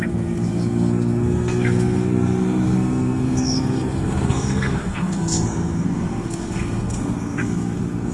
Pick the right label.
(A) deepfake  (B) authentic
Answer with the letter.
A